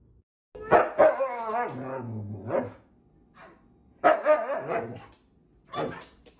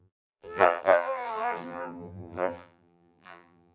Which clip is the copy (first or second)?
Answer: second